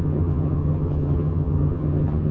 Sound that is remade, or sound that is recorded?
remade